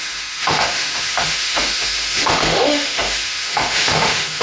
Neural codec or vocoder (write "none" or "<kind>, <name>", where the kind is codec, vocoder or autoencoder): autoencoder, DAC-VAE